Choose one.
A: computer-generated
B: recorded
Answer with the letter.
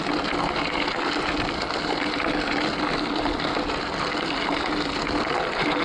B